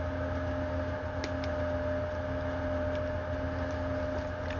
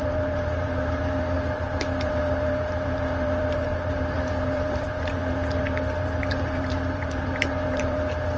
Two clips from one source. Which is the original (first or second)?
first